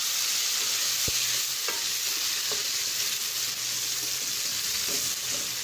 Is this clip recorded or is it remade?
recorded